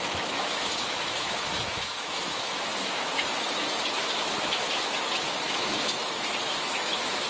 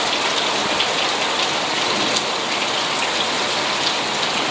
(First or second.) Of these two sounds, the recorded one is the second